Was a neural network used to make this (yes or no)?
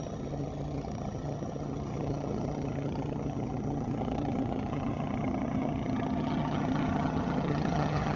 yes